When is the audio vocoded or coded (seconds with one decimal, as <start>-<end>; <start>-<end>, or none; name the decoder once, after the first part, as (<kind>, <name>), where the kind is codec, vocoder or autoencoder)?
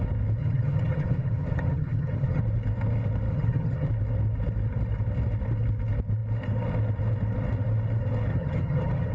0.4-2.4 (vocoder, HiFi-GAN); 3.3-3.9; 8.3-9.1